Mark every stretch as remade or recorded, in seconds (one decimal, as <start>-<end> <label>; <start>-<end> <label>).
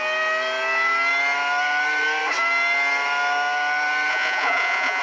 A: 0.0-4.1 recorded; 4.1-5.0 remade